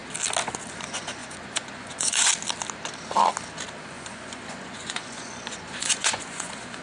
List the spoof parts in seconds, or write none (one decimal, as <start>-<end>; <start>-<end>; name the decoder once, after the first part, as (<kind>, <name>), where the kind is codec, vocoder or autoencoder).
0.7-2.3 (vocoder, Vocos); 3.8-6.8